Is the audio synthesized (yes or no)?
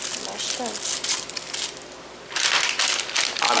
no